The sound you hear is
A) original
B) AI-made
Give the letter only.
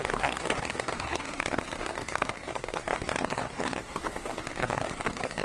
B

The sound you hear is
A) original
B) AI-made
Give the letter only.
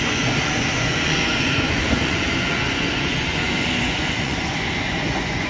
B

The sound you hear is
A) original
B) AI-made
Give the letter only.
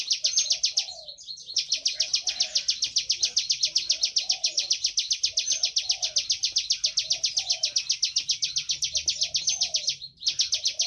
A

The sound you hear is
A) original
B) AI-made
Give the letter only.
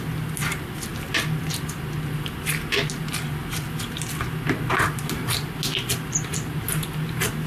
A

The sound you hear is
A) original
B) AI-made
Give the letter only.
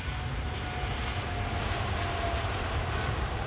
A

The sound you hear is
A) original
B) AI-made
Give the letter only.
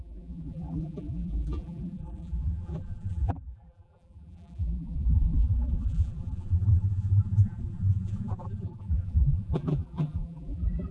B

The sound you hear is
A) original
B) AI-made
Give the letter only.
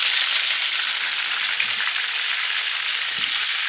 A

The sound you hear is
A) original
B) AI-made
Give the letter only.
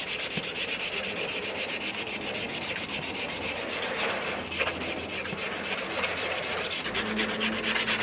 A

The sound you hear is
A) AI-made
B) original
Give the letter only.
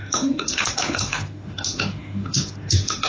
A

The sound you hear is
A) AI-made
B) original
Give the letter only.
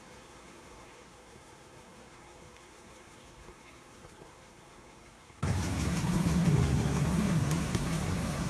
A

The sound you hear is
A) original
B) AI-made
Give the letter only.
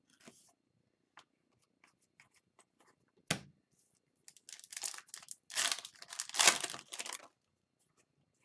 A